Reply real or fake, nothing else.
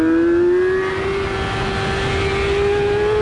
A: real